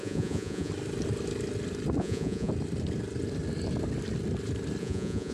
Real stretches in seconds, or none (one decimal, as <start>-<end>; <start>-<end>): 0.7-2.0; 2.5-4.8